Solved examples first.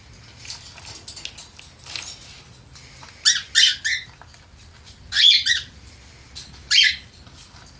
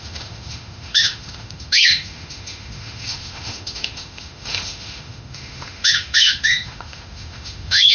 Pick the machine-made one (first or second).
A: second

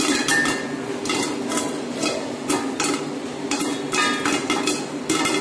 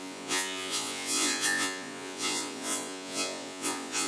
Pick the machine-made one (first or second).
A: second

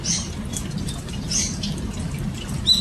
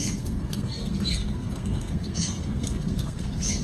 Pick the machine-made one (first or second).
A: second